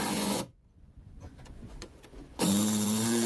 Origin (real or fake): fake